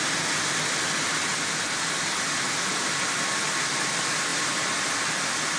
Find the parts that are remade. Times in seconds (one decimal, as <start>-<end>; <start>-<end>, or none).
4.3-5.6